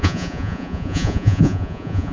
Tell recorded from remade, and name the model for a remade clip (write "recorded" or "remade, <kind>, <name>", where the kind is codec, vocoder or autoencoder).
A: remade, vocoder, Vocos